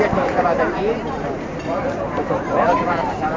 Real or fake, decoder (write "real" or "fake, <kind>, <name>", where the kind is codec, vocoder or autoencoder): fake, vocoder, BigVGAN v2